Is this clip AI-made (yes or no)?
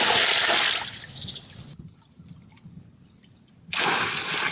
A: no